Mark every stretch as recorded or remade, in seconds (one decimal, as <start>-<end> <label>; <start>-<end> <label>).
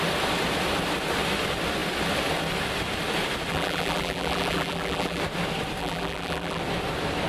0.0-3.5 recorded; 3.5-5.2 remade; 5.2-5.8 recorded; 5.8-6.6 remade; 6.6-7.3 recorded